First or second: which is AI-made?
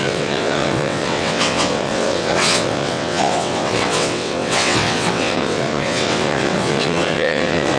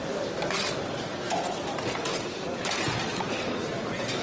first